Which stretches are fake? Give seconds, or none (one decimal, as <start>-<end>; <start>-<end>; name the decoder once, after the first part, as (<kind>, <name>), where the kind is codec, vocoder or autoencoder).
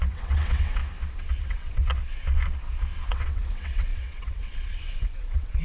0.0-0.8 (vocoder, WaveNeXt); 1.4-1.8; 3.1-5.6